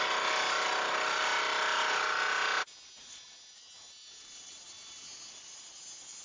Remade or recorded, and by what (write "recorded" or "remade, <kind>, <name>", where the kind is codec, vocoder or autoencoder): recorded